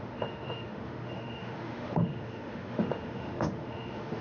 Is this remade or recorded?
remade